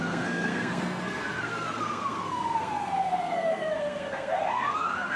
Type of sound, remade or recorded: remade